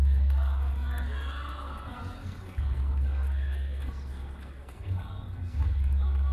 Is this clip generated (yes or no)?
yes